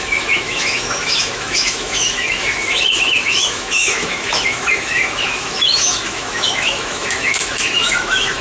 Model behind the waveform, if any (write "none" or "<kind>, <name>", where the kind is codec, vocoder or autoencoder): autoencoder, DAC-VAE